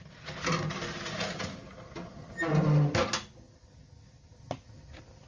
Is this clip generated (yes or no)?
no